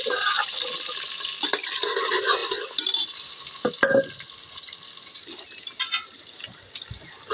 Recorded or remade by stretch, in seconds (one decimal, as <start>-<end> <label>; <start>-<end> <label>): 0.0-7.3 recorded